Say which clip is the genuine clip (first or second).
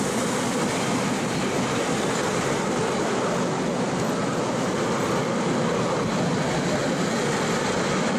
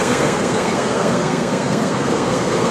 first